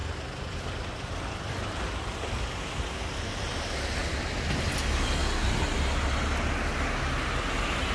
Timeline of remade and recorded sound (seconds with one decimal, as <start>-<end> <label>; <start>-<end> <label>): 0.0-2.3 remade; 2.3-7.9 recorded